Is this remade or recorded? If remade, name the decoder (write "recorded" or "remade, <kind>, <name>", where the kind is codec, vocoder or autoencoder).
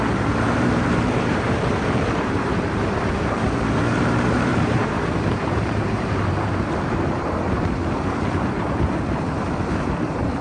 remade, vocoder, BigVGAN v2